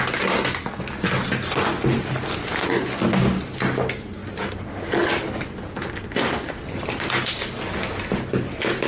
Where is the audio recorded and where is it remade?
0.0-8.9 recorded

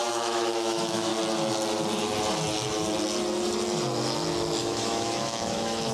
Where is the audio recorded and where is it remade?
0.0-1.1 remade; 1.1-4.6 recorded; 4.6-5.9 remade

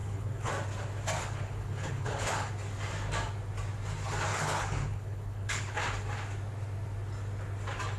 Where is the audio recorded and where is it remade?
0.0-0.5 remade; 0.5-1.2 recorded; 1.2-2.5 remade; 2.5-4.3 recorded; 4.3-5.8 remade; 5.8-8.0 recorded

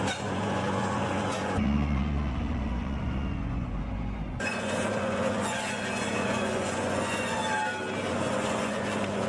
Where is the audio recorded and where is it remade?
0.0-7.4 remade; 7.4-8.1 recorded; 8.1-9.3 remade

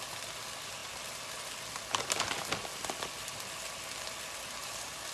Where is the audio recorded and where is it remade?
0.0-5.1 recorded

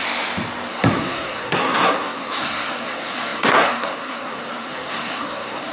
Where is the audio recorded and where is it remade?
0.0-0.7 recorded; 0.7-5.7 remade

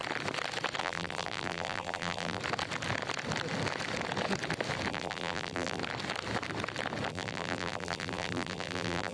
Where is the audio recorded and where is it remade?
0.0-0.8 recorded; 0.8-2.4 remade; 2.4-4.9 recorded; 4.9-5.8 remade; 5.8-7.1 recorded; 7.1-9.1 remade

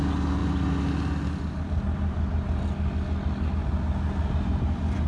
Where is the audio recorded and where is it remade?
0.0-5.1 recorded